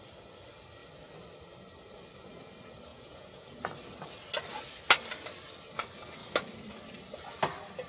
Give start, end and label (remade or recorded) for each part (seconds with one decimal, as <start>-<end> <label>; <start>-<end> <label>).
0.0-2.9 recorded; 2.9-3.5 remade; 3.5-7.9 recorded